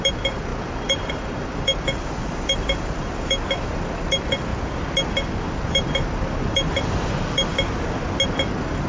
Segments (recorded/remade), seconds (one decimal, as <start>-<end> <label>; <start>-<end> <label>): 0.0-4.5 remade; 4.5-5.5 recorded; 5.5-7.5 remade; 7.5-8.3 recorded; 8.3-8.9 remade